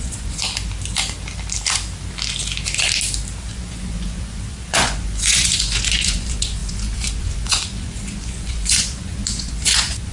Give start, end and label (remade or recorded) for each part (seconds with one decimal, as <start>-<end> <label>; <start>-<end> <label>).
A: 0.0-0.4 remade; 0.4-3.4 recorded; 3.4-10.1 remade